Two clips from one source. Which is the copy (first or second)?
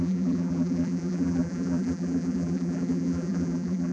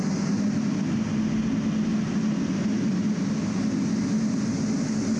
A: first